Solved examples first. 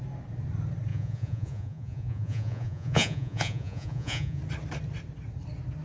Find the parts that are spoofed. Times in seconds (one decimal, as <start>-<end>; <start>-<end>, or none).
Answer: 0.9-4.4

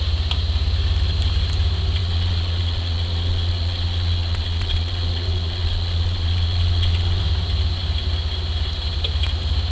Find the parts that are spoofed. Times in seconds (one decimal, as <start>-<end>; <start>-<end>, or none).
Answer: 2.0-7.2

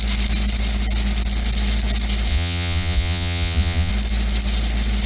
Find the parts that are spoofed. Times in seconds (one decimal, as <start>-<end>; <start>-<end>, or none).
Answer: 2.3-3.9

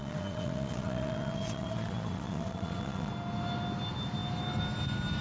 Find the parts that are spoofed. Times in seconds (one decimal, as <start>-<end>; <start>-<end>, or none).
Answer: 0.0-3.1